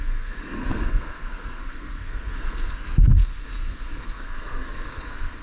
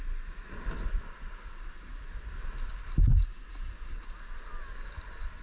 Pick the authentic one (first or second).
second